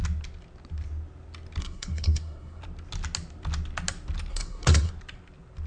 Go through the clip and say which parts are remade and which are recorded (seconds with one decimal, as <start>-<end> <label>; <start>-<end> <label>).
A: 0.0-1.6 recorded; 1.6-2.6 remade; 2.6-4.3 recorded; 4.3-4.9 remade; 4.9-5.7 recorded